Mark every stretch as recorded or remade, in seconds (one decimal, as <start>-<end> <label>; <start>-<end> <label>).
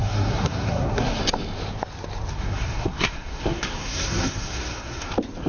0.0-1.2 remade; 1.2-2.3 recorded; 2.3-5.1 remade; 5.1-5.5 recorded